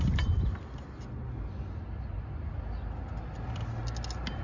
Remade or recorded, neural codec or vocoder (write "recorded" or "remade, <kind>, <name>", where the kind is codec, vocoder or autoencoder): recorded